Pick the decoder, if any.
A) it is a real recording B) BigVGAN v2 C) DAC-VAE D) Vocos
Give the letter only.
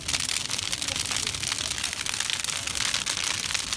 A